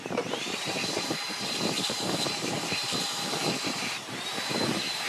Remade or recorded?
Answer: remade